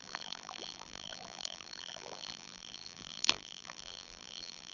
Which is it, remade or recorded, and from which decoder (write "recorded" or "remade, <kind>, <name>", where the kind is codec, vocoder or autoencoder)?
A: remade, vocoder, BigVGAN v2